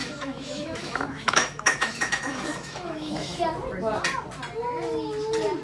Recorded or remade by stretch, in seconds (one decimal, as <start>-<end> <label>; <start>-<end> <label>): 0.0-3.4 remade; 3.4-5.6 recorded